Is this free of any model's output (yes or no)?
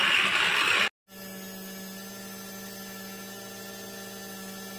yes